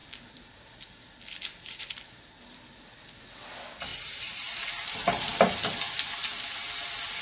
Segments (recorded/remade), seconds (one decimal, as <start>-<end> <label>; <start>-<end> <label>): 0.0-1.5 recorded; 1.5-2.8 remade; 2.8-3.9 recorded; 3.9-5.3 remade; 5.3-7.2 recorded